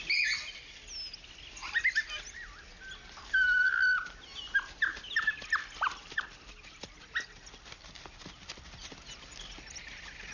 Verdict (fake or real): real